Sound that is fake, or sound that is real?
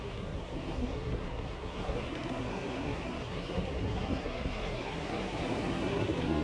fake